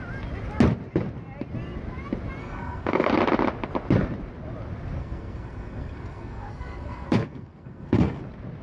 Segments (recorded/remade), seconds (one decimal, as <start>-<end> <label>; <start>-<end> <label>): 0.0-2.4 recorded; 2.4-3.1 remade; 3.1-5.0 recorded; 5.0-8.2 remade; 8.2-8.6 recorded